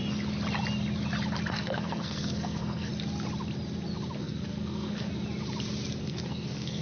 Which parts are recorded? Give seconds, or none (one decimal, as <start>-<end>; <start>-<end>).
0.0-1.5; 2.9-4.2; 5.1-6.0

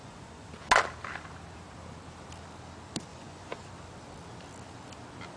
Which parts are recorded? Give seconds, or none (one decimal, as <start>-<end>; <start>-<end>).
0.5-3.1; 3.7-5.4

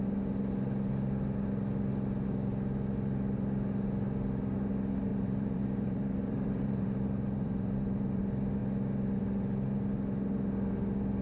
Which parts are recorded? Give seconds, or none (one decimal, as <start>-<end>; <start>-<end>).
0.0-5.1; 8.2-11.2

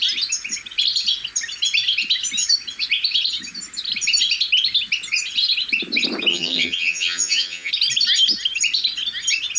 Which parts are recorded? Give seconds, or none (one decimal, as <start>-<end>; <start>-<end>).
0.0-6.3; 7.7-9.6

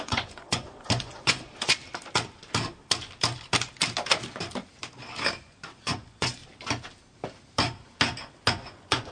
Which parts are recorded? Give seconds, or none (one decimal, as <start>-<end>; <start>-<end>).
1.8-5.4; 6.4-8.5

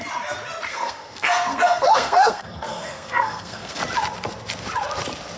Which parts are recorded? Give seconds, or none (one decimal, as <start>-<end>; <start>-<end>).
0.0-0.7; 3.8-5.4